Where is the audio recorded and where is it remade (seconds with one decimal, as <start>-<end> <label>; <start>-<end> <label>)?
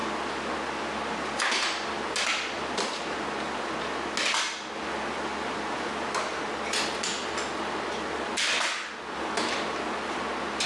0.0-10.7 recorded